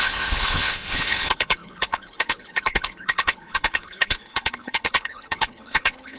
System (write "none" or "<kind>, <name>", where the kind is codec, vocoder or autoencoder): codec, HILCodec